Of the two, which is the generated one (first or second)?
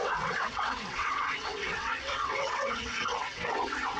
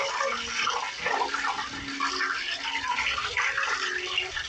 first